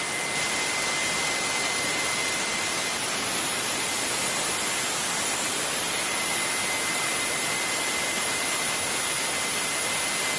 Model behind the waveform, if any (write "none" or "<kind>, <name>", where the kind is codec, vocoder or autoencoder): none